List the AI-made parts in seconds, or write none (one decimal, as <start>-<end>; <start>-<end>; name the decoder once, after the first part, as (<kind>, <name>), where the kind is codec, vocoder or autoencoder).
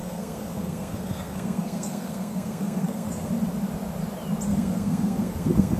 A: 0.0-3.3 (codec, SNAC); 4.5-5.8